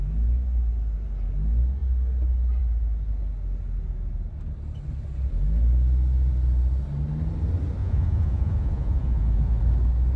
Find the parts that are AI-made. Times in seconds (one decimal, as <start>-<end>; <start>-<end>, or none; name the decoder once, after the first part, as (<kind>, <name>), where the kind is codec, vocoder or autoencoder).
7.8-9.6 (vocoder, Vocos)